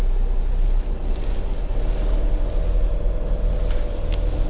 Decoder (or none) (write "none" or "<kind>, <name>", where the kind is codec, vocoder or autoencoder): none